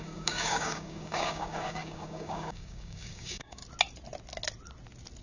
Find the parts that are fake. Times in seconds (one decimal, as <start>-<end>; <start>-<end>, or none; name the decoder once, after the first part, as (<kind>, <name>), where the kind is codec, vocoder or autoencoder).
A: 0.0-3.6 (codec, DAC)